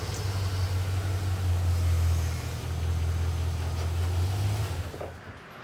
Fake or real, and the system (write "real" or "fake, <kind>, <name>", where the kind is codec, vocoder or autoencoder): real